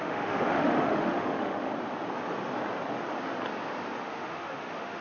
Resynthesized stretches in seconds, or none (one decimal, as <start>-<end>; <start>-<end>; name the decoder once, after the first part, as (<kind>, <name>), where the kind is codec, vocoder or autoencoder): 0.0-1.7 (autoencoder, DAC-VAE); 4.0-5.0